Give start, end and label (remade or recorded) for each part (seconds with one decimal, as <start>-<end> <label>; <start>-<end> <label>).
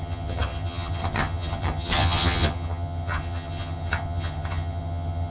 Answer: 0.0-5.3 remade